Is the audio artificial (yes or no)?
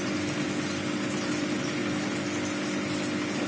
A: no